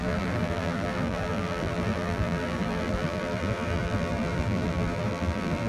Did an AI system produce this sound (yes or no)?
yes